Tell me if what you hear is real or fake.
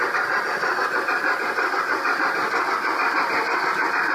real